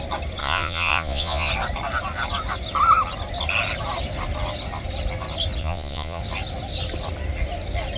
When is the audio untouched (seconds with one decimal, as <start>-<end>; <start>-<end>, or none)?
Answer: 0.0-0.4; 1.5-5.6; 6.2-8.0